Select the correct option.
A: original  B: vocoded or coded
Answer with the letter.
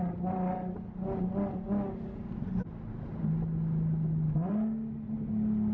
A